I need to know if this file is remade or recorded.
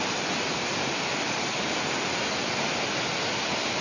recorded